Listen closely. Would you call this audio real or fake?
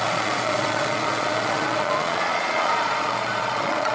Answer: fake